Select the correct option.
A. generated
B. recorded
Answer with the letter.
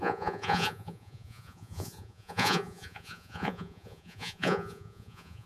A